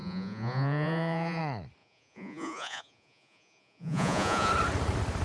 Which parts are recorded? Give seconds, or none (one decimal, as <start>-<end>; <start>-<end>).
1.4-1.8; 4.5-5.2

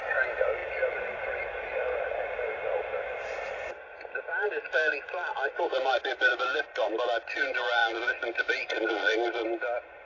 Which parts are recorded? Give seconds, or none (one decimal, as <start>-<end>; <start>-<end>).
0.0-10.1

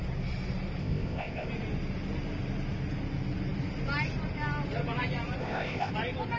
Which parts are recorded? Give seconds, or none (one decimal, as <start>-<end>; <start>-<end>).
0.0-0.8; 1.5-5.4; 5.9-6.4

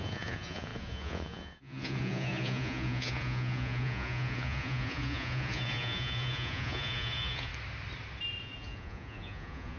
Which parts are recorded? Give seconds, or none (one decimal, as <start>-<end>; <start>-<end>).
7.5-8.4

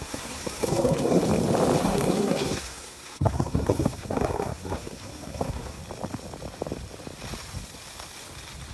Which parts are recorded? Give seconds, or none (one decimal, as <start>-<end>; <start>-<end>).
1.2-1.8; 5.8-8.7